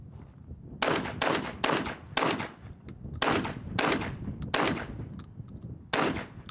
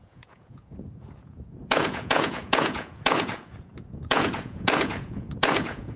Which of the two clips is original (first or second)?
first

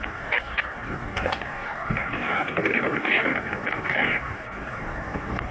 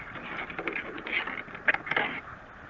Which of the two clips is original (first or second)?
second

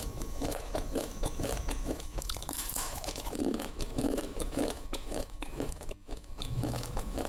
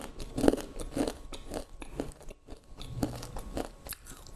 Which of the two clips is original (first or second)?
second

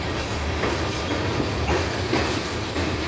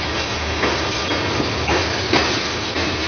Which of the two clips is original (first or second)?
second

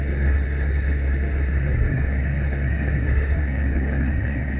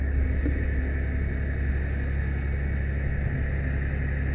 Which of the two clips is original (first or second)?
second